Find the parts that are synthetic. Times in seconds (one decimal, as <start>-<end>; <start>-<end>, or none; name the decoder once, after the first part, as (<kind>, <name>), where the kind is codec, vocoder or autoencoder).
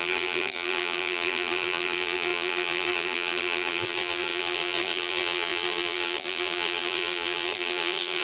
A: 0.0-8.2 (vocoder, BigVGAN v2)